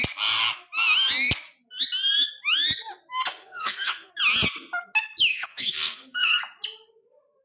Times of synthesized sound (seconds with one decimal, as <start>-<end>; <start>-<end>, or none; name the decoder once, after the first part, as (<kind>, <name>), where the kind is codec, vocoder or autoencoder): 3.4-4.1 (codec, SNAC); 5.3-6.4